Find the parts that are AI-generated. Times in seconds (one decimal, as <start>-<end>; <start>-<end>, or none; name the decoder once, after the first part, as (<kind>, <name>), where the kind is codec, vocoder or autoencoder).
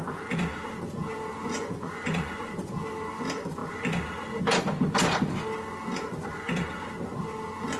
1.5-2.7 (vocoder, Vocos)